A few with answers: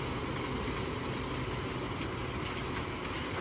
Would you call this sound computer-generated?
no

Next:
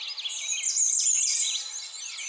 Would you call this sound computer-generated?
no